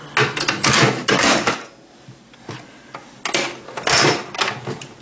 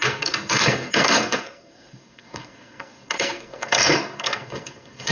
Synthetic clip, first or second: second